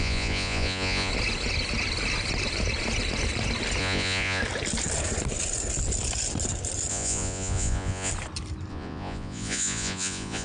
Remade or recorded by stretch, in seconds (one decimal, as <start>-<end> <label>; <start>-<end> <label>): 0.0-1.1 remade; 1.1-3.8 recorded; 3.8-4.4 remade; 4.4-6.9 recorded; 6.9-8.1 remade; 8.1-8.7 recorded; 8.7-10.4 remade